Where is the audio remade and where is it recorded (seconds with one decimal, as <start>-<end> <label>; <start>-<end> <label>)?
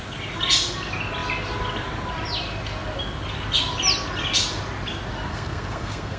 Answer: 0.0-5.3 recorded; 5.3-6.2 remade